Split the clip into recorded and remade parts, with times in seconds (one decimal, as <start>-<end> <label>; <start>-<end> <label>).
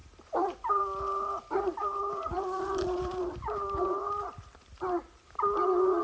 0.0-0.8 remade; 0.8-1.8 recorded; 1.8-5.4 remade; 5.4-6.0 recorded